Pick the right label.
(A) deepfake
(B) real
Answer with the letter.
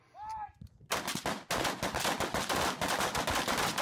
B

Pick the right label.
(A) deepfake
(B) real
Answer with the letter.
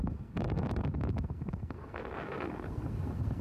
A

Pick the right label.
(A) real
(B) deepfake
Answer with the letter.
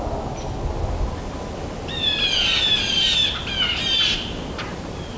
A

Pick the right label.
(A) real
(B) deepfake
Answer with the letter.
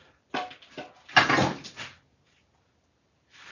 A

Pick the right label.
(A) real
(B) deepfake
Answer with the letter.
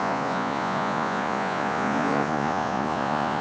B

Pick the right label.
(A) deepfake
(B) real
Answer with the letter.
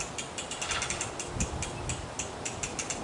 B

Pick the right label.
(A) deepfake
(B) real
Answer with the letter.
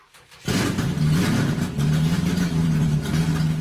A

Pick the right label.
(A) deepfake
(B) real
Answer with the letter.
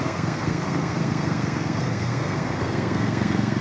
A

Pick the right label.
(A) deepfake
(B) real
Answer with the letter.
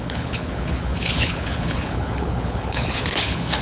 A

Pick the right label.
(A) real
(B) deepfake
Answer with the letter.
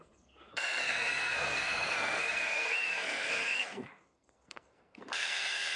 B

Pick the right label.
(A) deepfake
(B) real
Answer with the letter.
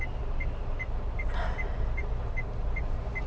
B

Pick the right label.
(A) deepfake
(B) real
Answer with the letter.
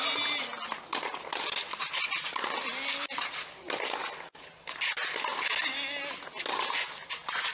B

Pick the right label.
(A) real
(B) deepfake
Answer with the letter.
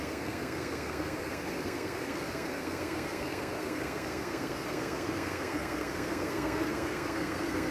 B